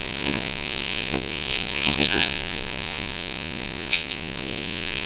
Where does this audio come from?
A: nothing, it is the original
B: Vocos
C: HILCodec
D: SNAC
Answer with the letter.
B